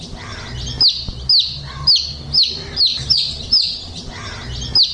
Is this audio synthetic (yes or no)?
no